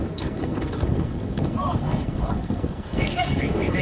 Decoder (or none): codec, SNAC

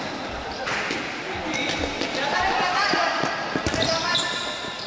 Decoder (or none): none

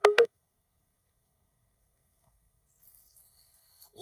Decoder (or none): codec, SNAC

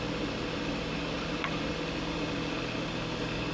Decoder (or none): none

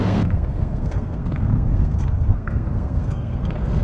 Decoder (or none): codec, SNAC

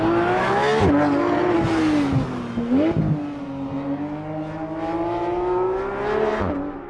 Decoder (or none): none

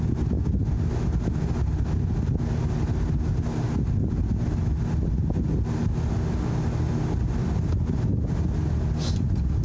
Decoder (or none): none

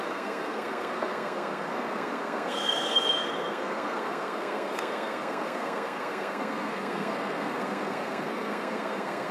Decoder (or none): codec, SNAC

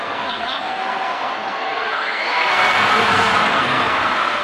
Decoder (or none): codec, SNAC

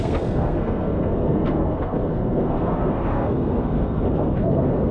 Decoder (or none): codec, SNAC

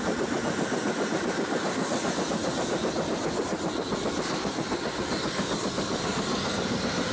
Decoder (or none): none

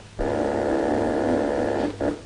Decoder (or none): none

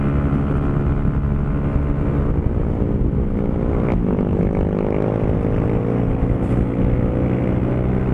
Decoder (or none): none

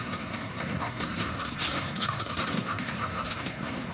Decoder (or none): codec, SNAC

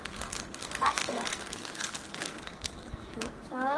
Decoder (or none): codec, SNAC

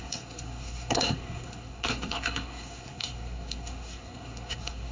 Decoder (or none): codec, SNAC